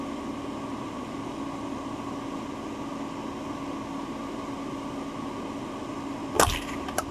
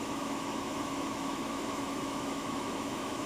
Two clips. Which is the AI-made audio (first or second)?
second